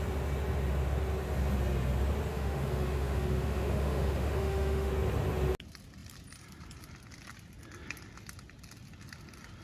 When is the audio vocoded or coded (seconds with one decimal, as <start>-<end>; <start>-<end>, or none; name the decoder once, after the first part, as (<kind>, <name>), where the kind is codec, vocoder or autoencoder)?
2.3-4.9 (autoencoder, DAC-VAE)